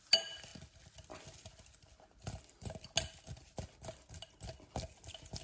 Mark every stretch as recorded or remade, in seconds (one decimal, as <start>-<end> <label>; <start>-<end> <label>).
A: 0.0-5.4 recorded